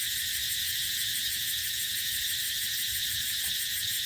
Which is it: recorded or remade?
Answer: remade